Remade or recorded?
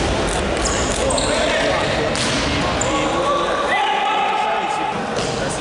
recorded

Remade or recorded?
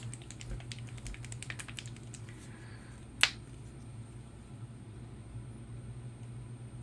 recorded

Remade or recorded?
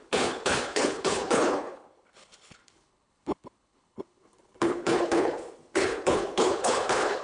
remade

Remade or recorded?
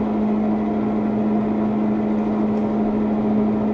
recorded